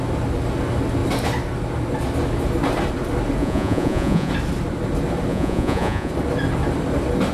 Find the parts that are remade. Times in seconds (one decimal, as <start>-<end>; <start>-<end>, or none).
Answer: 3.4-4.3; 5.3-6.1